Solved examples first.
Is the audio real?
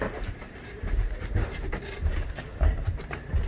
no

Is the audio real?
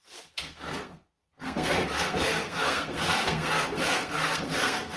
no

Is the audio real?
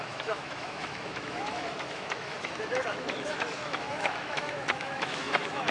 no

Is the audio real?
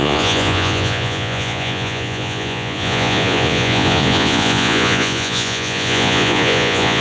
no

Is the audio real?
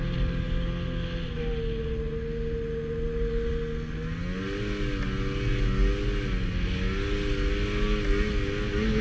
yes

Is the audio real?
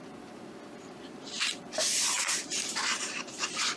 no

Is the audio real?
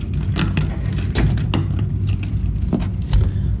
yes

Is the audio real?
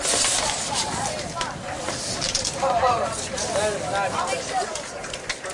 yes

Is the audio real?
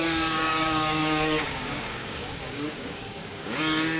no